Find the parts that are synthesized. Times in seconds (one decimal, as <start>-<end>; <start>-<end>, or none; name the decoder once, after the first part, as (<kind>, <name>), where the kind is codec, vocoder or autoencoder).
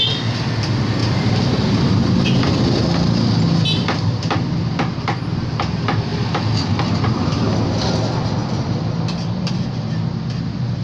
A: 1.0-2.6 (vocoder, BigVGAN v2); 8.4-9.5